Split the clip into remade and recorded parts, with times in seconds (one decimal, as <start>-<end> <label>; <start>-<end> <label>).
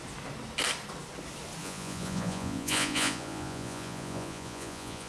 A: 0.0-1.6 recorded; 1.6-5.1 remade